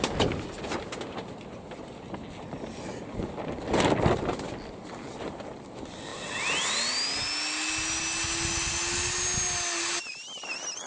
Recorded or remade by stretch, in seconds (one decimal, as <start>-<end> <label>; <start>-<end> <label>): 0.0-10.9 recorded